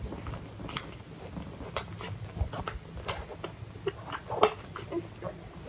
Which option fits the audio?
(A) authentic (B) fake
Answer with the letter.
A